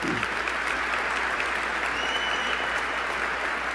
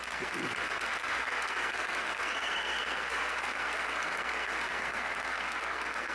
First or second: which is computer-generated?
second